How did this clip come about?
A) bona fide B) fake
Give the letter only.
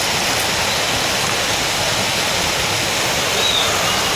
A